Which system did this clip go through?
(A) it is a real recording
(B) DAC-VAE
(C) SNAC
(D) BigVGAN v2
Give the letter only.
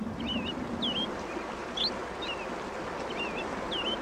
A